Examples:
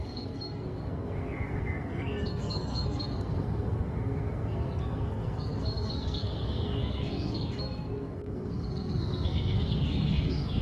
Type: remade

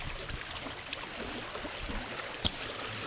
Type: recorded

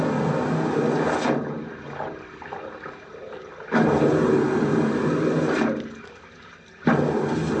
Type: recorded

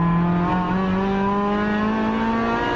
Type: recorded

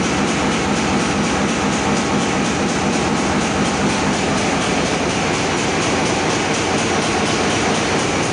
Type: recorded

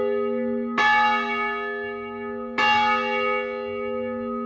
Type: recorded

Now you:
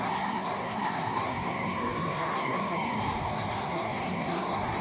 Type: remade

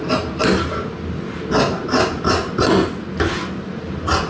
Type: recorded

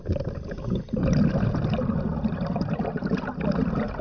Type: recorded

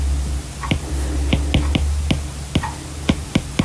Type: recorded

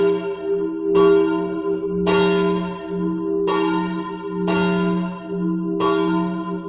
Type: recorded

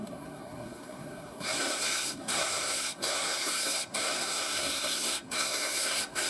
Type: remade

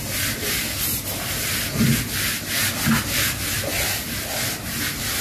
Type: recorded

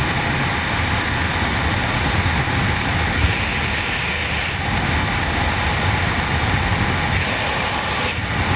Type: recorded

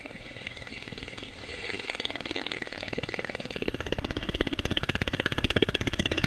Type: remade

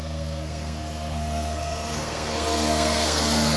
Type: remade